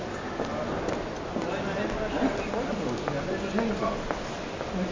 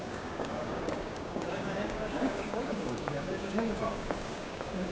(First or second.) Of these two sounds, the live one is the first